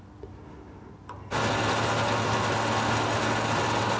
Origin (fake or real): real